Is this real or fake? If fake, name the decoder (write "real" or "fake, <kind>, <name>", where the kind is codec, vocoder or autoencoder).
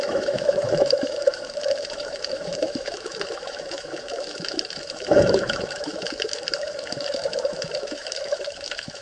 fake, autoencoder, DAC-VAE